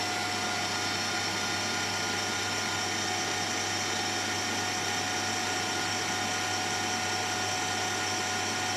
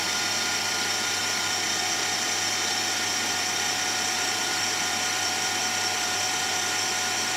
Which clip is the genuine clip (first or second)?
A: first